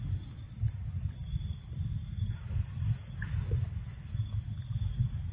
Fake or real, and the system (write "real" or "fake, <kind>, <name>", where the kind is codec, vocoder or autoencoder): real